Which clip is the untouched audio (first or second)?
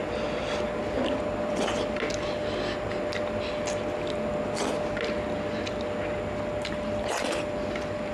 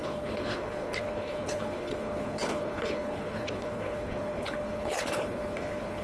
first